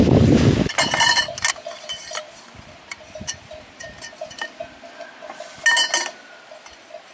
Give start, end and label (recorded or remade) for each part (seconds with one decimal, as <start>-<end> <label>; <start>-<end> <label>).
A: 0.0-2.0 recorded; 2.0-3.3 remade; 3.3-4.2 recorded; 4.2-4.9 remade; 4.9-7.1 recorded